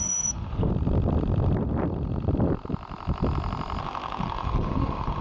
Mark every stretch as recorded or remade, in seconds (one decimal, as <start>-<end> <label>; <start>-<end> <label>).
0.0-0.7 remade; 0.7-3.8 recorded; 3.8-5.2 remade